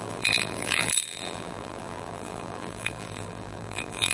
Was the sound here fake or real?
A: fake